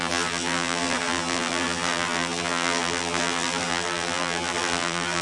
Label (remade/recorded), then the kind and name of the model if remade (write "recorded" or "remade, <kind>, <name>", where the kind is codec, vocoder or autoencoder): remade, vocoder, BigVGAN v2